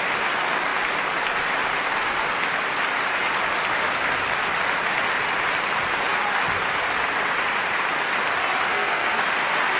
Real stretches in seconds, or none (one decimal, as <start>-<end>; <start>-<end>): 0.0-8.7; 9.2-9.8